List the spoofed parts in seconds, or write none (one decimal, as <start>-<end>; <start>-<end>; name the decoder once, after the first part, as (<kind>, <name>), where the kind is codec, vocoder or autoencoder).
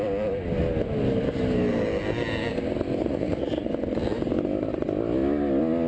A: 3.0-3.7 (vocoder, Vocos)